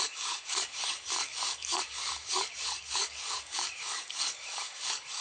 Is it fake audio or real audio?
fake